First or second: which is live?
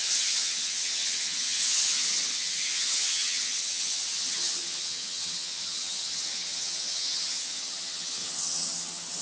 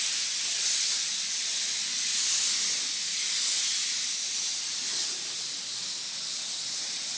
second